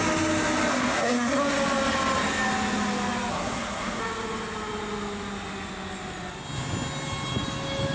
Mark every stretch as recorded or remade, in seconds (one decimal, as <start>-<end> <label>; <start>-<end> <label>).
0.0-0.7 recorded; 0.7-1.4 remade; 1.4-3.3 recorded; 3.3-4.0 remade; 4.0-7.9 recorded